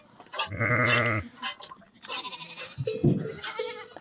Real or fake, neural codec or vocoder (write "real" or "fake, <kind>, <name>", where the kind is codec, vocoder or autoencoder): real